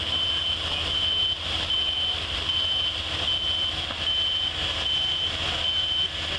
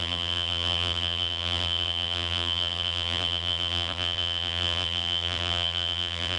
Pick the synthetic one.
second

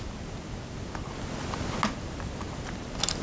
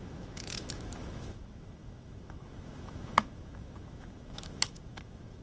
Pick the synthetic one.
second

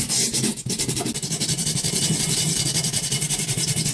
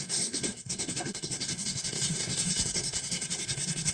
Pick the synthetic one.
second